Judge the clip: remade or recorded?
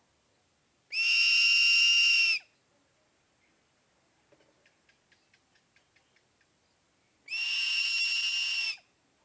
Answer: recorded